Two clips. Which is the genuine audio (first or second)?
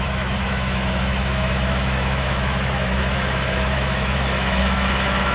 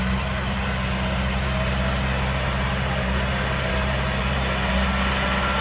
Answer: second